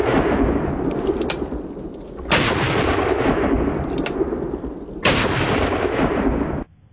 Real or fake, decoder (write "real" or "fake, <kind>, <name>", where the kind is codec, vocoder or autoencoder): real